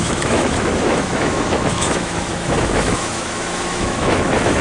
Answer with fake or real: fake